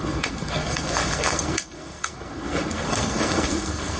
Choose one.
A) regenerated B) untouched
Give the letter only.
A